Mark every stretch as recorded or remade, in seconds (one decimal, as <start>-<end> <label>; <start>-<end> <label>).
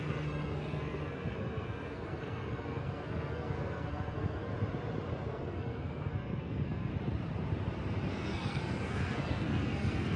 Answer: 0.0-4.5 remade; 4.5-5.3 recorded; 5.3-6.9 remade; 6.9-8.1 recorded; 8.1-10.2 remade